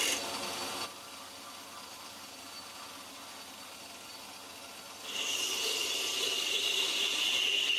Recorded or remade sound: recorded